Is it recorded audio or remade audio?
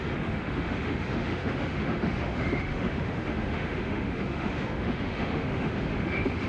remade